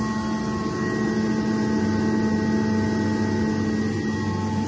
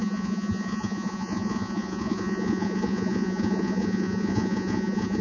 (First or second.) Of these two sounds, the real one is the first